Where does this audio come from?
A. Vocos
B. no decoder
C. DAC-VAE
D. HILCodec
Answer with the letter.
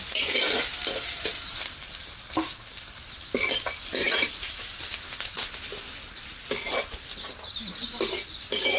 B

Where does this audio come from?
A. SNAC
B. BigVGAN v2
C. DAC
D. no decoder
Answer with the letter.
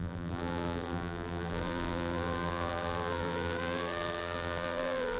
B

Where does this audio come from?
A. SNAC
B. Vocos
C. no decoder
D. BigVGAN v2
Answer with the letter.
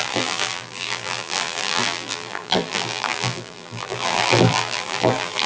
D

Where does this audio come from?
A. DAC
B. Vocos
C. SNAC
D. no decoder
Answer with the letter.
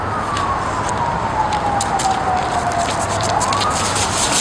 D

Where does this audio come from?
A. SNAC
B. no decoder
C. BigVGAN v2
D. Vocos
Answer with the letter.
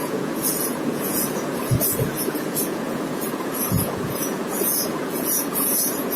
D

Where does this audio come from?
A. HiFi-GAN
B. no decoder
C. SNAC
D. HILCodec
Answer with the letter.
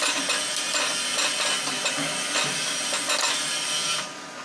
B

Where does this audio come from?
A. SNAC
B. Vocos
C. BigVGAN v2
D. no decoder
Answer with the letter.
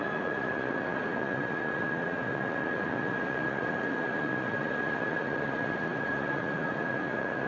B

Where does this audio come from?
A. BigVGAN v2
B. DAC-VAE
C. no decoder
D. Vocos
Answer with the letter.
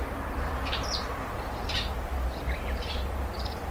A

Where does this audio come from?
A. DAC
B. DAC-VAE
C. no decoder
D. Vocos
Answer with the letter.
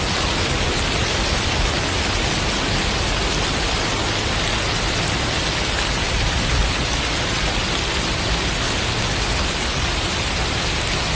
C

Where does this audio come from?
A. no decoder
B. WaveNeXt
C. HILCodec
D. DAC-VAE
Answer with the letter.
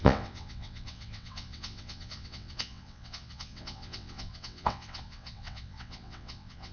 B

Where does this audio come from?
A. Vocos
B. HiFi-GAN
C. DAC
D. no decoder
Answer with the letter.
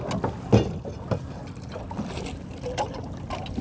D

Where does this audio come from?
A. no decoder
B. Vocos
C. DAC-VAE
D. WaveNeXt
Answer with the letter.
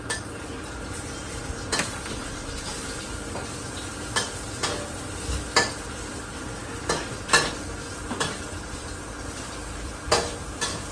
A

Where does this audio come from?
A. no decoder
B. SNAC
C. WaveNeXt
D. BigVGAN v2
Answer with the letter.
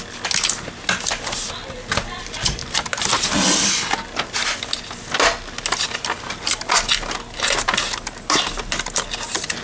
A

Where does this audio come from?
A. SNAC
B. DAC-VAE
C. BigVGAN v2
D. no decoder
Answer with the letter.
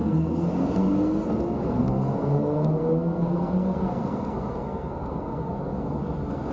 A